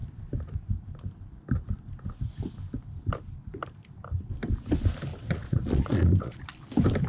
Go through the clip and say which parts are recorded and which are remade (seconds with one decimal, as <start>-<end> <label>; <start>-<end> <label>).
0.0-5.2 recorded; 5.2-6.4 remade; 6.4-7.1 recorded